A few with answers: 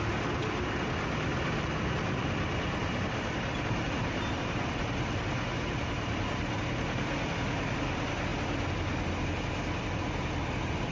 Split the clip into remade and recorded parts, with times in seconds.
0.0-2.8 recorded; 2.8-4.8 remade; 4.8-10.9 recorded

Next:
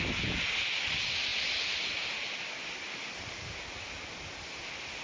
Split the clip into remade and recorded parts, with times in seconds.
0.0-5.0 recorded

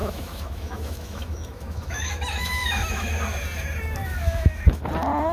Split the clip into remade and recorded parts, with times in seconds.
0.0-3.1 remade; 3.1-4.0 recorded; 4.0-4.8 remade; 4.8-5.3 recorded